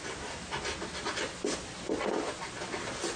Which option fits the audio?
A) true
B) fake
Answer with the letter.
A